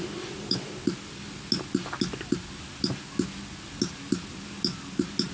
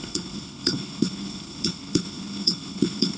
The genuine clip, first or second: first